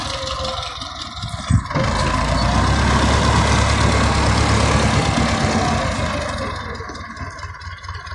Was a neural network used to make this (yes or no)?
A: no